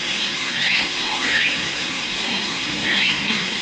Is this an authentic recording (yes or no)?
no